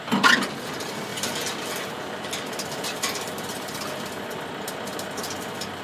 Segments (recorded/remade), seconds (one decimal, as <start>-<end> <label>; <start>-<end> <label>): 0.0-1.1 recorded; 1.1-3.3 remade; 3.3-5.8 recorded